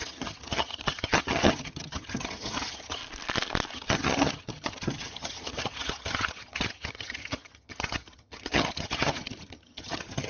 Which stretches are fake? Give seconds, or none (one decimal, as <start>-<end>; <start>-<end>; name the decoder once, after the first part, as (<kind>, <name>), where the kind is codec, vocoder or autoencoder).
0.0-3.0 (vocoder, HiFi-GAN); 3.7-10.3